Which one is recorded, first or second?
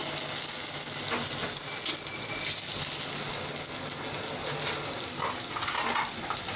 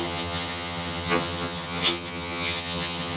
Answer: first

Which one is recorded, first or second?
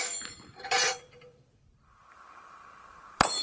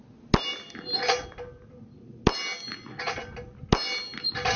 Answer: second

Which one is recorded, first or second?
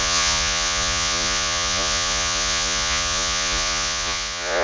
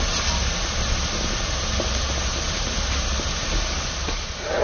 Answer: second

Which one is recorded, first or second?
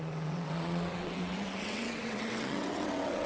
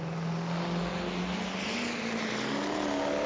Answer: second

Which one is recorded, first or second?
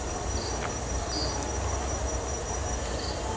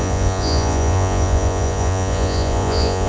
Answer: first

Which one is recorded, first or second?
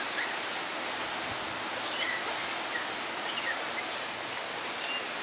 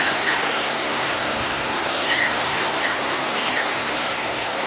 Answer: first